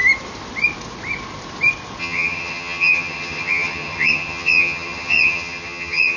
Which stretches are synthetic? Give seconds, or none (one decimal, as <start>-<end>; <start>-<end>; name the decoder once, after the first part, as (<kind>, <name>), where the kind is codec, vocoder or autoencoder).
2.0-6.2 (vocoder, HiFi-GAN)